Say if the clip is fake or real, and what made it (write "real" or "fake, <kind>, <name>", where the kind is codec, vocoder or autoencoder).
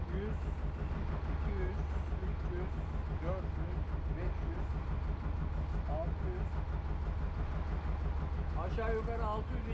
real